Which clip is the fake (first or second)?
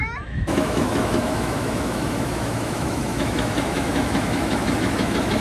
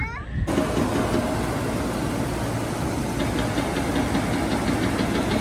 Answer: first